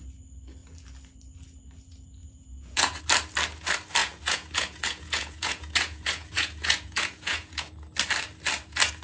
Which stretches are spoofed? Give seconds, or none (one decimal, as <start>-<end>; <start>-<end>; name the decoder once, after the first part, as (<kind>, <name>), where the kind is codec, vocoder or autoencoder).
2.2-3.0 (vocoder, Vocos); 4.0-7.7